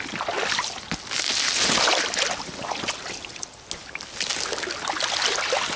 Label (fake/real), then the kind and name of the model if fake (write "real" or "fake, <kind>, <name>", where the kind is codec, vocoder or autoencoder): real